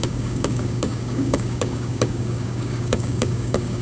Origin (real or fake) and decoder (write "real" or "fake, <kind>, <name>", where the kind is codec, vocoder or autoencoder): fake, codec, DAC